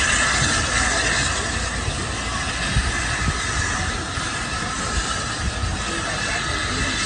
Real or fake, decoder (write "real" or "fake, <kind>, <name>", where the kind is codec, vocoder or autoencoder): real